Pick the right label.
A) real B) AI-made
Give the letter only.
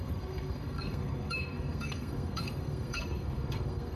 B